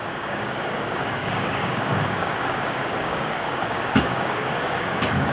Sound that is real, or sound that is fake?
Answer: fake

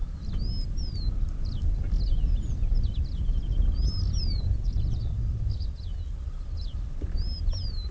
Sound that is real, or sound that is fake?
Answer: real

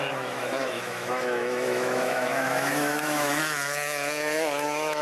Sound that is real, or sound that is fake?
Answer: fake